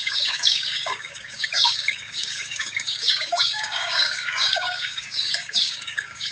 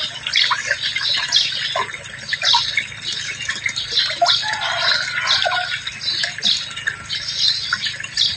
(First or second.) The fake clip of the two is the first